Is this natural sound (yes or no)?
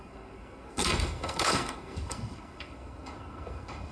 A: no